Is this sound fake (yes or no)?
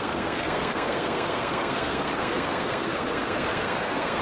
yes